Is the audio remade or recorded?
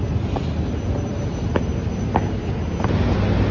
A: recorded